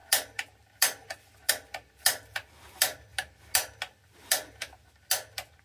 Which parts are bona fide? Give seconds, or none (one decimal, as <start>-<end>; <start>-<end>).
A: 3.1-5.6